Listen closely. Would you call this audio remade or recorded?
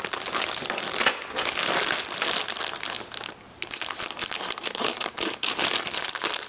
recorded